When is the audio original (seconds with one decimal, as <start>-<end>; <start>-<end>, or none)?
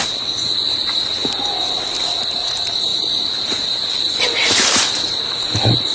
0.0-5.9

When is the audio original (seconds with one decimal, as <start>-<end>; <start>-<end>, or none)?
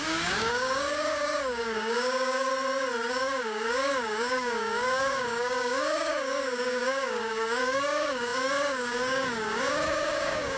2.5-3.1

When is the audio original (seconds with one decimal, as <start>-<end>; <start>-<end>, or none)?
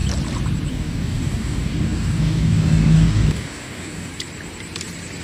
0.0-0.7; 4.1-5.2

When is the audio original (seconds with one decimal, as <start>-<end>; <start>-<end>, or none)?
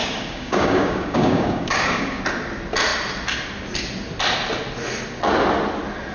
2.2-6.1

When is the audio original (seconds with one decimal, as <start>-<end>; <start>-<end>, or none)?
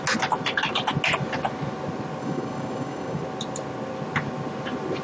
0.0-2.2; 3.2-5.0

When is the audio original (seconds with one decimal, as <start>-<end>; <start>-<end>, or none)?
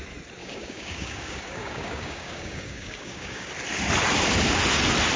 0.0-0.4; 3.5-5.2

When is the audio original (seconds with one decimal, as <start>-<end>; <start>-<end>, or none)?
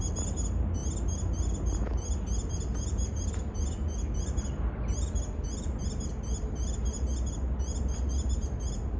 0.0-9.0